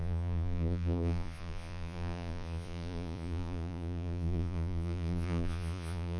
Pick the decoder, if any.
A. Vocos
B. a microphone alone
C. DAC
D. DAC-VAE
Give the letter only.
A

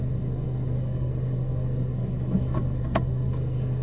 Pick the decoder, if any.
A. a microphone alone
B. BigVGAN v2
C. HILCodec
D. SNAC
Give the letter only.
D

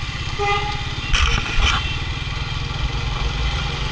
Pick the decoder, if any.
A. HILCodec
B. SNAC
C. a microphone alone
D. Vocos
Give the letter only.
C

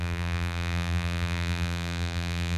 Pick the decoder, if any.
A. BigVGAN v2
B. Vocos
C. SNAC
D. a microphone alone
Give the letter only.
A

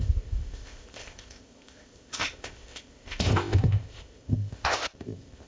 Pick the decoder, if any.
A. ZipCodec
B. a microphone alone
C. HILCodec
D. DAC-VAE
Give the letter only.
A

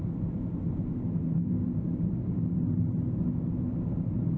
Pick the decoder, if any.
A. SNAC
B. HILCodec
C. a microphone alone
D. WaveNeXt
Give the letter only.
C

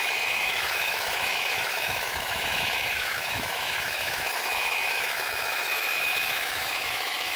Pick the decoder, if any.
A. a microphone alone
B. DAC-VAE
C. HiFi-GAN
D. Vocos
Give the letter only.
B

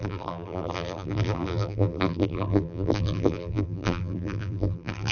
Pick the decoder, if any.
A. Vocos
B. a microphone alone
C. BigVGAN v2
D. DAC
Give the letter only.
C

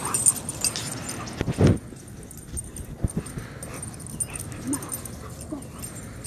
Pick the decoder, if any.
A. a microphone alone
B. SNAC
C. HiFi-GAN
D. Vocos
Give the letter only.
A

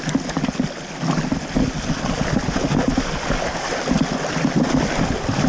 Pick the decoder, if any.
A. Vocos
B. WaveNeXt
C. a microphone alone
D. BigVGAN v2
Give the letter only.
C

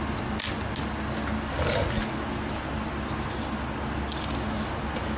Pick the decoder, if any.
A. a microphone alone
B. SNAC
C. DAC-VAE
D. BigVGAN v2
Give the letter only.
A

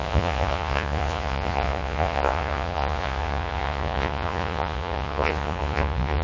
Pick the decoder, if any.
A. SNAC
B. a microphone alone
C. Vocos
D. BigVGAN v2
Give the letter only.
C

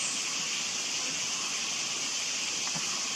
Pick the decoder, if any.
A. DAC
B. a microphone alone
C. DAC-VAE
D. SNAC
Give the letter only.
B